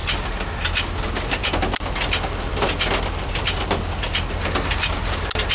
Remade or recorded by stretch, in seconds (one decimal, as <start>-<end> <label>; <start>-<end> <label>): 0.0-5.5 recorded